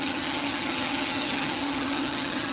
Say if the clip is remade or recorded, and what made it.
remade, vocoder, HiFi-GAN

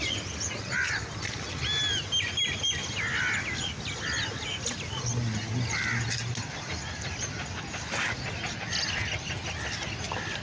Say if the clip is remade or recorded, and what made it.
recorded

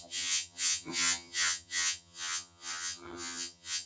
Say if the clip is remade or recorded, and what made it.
remade, vocoder, HiFi-GAN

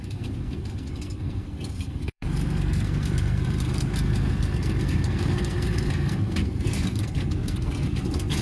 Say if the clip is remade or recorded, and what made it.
remade, codec, SNAC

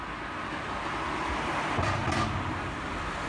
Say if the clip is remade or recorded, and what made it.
recorded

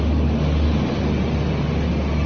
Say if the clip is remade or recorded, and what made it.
recorded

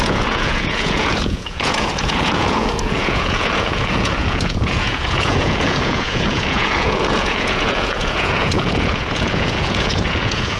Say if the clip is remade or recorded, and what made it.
remade, vocoder, Vocos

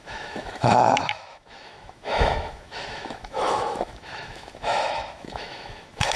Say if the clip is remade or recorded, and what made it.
remade, autoencoder, DAC-VAE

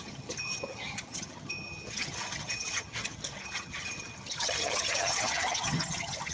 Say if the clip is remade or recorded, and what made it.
remade, vocoder, HiFi-GAN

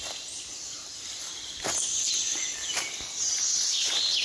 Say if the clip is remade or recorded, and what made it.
recorded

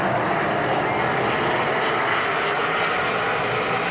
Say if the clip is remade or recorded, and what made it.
recorded